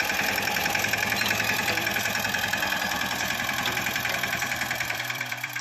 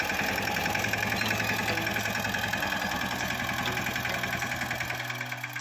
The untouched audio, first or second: second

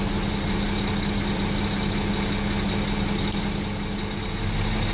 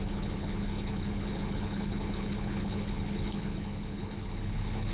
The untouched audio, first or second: first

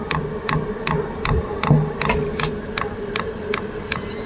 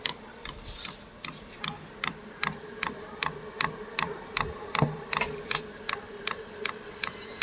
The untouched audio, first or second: first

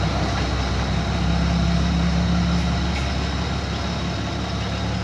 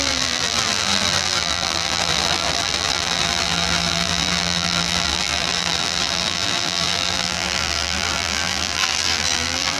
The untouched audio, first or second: first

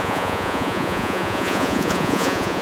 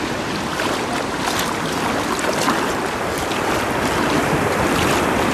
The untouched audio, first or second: second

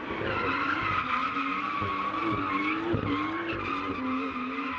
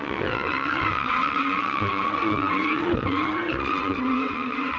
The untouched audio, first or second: first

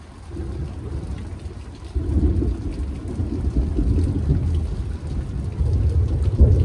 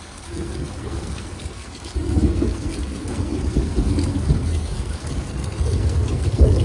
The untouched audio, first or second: first